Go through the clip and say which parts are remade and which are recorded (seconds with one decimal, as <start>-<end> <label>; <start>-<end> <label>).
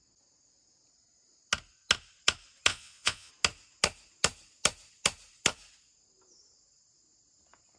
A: 0.0-2.7 recorded; 2.7-3.3 remade; 3.3-7.8 recorded